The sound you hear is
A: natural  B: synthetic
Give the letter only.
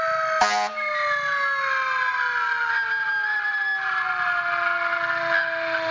A